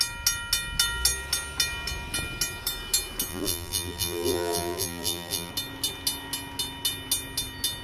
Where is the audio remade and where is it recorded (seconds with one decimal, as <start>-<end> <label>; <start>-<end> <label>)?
0.0-3.3 recorded; 3.3-5.5 remade; 5.5-7.8 recorded